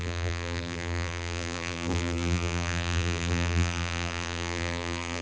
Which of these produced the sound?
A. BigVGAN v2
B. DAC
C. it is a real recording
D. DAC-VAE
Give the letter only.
A